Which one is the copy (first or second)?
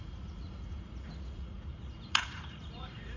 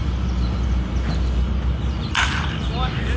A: first